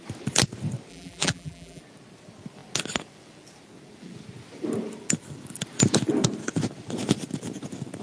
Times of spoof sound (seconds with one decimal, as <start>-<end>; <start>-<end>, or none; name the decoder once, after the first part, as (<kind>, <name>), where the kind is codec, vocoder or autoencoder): 0.9-1.8 (vocoder, BigVGAN v2)